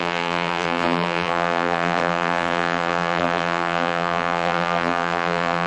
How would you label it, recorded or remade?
remade